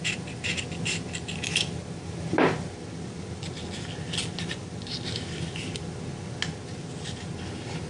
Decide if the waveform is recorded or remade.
recorded